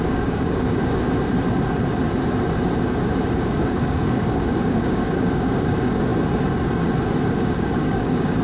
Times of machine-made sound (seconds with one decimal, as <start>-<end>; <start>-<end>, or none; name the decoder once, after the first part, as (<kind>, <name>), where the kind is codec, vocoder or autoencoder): 0.0-0.8 (codec, DAC); 3.3-6.1; 7.4-8.4